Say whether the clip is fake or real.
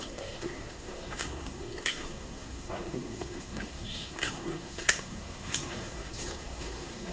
fake